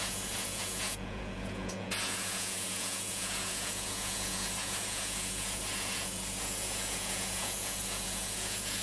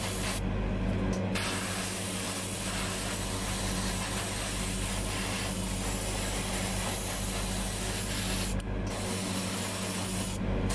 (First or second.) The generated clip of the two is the first